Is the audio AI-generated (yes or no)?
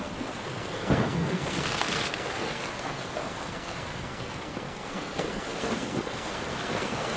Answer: yes